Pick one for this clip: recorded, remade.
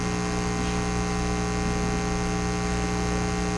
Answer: recorded